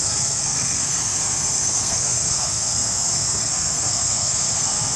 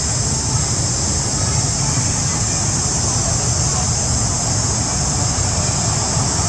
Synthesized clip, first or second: first